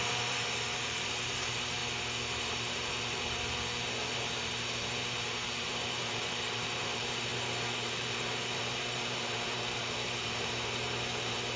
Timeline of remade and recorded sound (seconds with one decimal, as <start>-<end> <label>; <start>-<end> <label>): 0.0-1.8 remade; 1.8-2.4 recorded; 2.4-11.6 remade